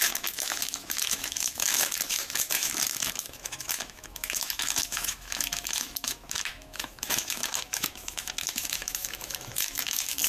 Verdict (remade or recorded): remade